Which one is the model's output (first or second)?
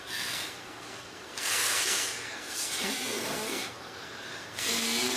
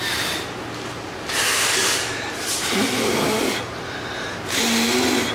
first